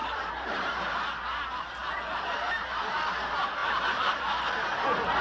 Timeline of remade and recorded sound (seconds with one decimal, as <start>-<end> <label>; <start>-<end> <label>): 0.0-1.1 remade; 1.1-1.8 recorded; 1.8-2.9 remade; 2.9-3.6 recorded; 3.6-4.4 remade; 4.4-5.2 recorded